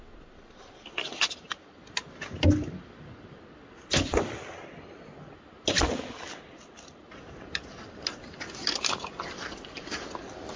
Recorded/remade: recorded